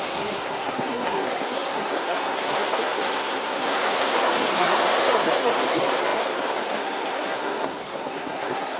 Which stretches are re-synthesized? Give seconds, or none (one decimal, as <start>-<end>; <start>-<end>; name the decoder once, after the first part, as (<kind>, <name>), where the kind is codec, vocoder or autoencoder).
0.0-8.8 (codec, SNAC)